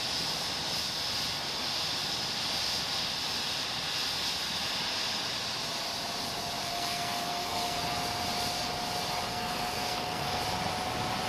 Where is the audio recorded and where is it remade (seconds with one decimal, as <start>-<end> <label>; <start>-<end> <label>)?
0.0-6.6 recorded; 6.6-7.8 remade; 7.8-9.3 recorded; 9.3-10.4 remade; 10.4-11.3 recorded

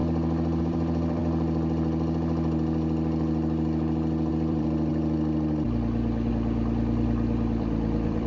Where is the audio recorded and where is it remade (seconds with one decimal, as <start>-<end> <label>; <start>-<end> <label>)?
0.0-0.6 recorded; 0.6-1.2 remade; 1.2-4.3 recorded; 4.3-4.9 remade; 4.9-6.3 recorded; 6.3-8.3 remade

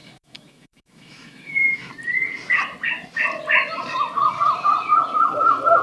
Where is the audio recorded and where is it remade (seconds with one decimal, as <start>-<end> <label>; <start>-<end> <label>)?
0.0-1.9 remade; 1.9-5.8 recorded

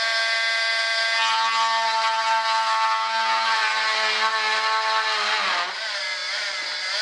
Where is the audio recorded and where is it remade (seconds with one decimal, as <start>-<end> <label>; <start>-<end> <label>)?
0.0-7.0 recorded

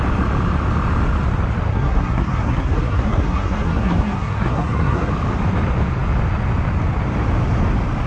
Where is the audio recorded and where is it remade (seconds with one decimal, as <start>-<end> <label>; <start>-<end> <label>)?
0.0-1.7 recorded; 1.7-5.1 remade; 5.1-8.1 recorded

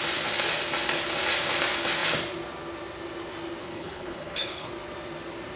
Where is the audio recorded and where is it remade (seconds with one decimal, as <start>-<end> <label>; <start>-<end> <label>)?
0.0-3.6 recorded; 3.6-4.7 remade; 4.7-5.6 recorded

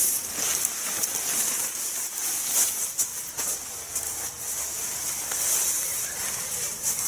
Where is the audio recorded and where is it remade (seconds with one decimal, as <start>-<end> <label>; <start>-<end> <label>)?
0.0-1.1 remade; 1.1-1.6 recorded; 1.6-3.1 remade; 3.1-5.8 recorded; 5.8-7.1 remade